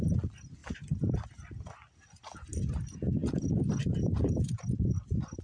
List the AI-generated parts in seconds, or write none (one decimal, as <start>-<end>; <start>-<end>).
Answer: 3.2-4.9